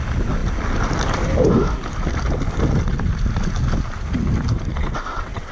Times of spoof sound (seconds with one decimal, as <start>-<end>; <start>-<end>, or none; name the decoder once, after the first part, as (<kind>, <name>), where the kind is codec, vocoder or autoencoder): 4.7-5.5 (vocoder, WaveNeXt)